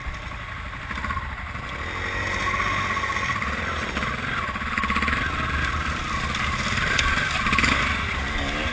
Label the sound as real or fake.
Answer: real